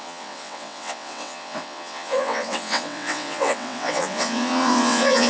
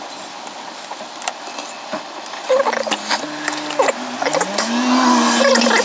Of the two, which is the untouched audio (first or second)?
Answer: second